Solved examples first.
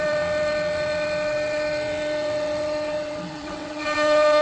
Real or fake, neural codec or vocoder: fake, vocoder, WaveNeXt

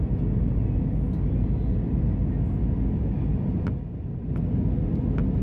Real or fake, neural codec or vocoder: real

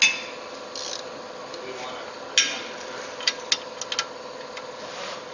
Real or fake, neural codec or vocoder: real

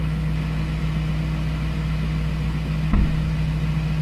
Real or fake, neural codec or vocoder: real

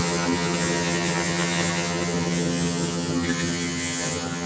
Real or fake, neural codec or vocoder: fake, vocoder, HiFi-GAN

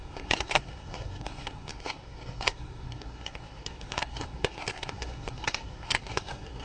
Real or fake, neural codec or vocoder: fake, codec, SNAC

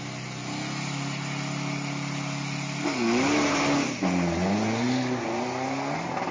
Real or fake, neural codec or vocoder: real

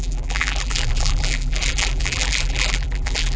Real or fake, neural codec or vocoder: fake, vocoder, BigVGAN v2